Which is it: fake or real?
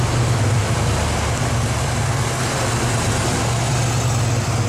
real